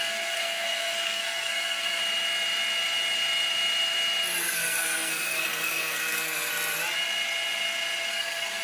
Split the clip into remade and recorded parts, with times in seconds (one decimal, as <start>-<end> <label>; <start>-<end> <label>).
0.0-2.0 remade; 2.0-4.4 recorded; 4.4-6.5 remade; 6.5-8.1 recorded; 8.1-8.6 remade